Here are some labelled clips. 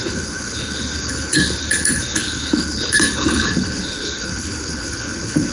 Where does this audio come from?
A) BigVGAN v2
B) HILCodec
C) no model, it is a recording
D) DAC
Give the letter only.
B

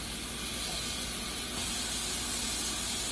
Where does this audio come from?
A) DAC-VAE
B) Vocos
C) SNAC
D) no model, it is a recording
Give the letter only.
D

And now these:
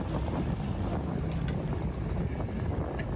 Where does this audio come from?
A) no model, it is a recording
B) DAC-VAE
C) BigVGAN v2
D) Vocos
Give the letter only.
A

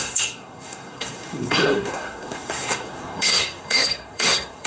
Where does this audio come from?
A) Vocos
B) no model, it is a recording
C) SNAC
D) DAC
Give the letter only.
C